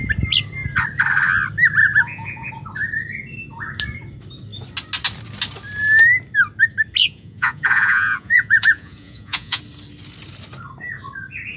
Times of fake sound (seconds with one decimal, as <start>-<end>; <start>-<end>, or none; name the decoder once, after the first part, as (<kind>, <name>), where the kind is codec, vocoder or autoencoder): 1.8-2.5 (vocoder, Vocos); 7.0-9.6